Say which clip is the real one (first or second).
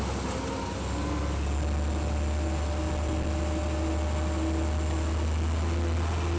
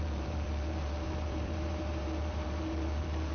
first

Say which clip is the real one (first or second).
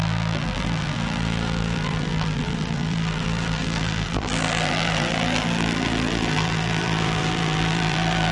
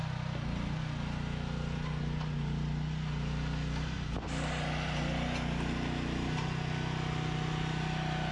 second